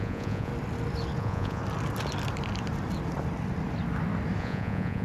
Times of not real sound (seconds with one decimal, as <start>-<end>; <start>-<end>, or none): 0.0-0.5; 1.2-1.6; 4.4-5.0